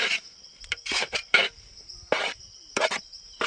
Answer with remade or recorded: remade